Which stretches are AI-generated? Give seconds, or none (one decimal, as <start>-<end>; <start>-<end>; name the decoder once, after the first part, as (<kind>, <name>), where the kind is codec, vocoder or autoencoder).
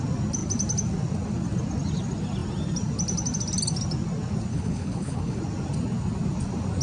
4.5-5.4 (codec, HILCodec)